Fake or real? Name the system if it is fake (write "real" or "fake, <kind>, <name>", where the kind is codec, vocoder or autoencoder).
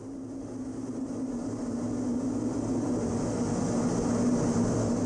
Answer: real